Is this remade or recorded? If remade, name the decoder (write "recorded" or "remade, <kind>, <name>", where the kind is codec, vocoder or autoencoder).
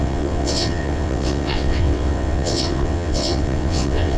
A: remade, vocoder, WaveNeXt